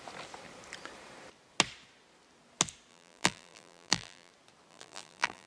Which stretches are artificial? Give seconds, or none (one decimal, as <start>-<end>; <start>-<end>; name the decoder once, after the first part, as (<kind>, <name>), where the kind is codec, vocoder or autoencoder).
2.9-4.3 (vocoder, BigVGAN v2); 4.7-5.5